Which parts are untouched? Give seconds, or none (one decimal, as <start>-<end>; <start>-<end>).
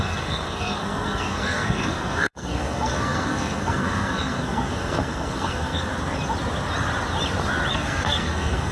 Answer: 5.9-7.7